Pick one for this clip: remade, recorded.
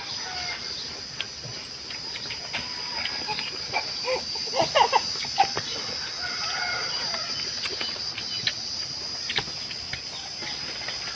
recorded